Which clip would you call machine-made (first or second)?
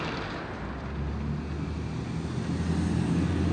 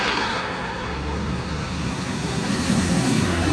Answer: second